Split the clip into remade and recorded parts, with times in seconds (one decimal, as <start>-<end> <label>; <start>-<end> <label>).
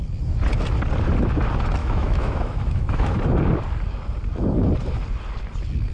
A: 0.0-1.8 recorded; 1.8-3.1 remade; 3.1-5.9 recorded